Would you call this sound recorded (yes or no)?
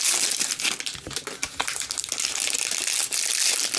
yes